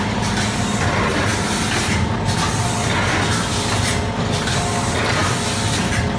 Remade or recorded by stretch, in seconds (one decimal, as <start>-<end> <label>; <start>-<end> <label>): 0.0-6.2 recorded